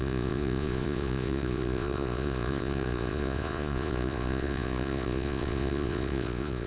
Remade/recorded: remade